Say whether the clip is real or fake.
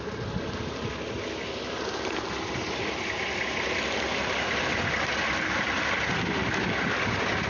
real